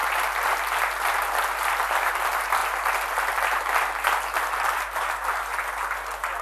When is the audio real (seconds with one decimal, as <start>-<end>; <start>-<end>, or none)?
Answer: 0.0-6.4